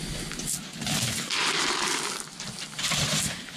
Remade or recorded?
recorded